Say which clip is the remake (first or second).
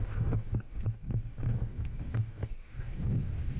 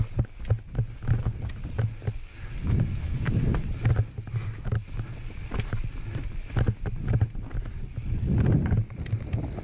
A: first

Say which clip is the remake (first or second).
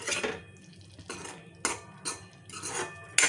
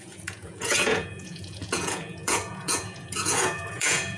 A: second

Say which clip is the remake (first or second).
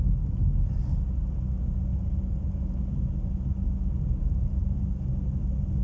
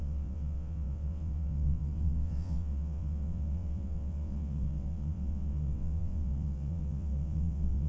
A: second